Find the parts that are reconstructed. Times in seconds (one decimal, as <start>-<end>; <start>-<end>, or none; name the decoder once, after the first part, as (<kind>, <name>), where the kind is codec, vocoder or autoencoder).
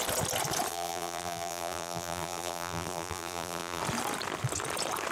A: 0.7-3.8 (vocoder, BigVGAN v2)